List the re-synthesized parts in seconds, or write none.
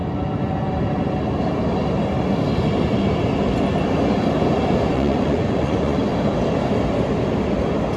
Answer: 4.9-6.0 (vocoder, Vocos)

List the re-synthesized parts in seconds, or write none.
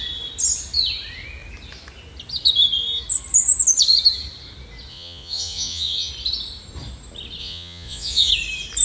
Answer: 4.9-6.1 (vocoder, Vocos); 7.4-8.3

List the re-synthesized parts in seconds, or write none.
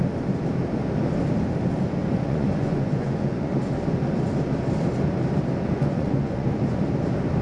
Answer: 2.0-3.5 (vocoder, Vocos); 5.7-6.8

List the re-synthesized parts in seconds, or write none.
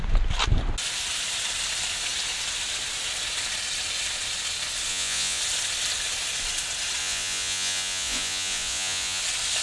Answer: 4.9-5.4 (vocoder, Vocos); 7.0-9.2